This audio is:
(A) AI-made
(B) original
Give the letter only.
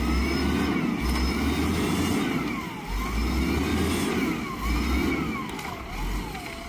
B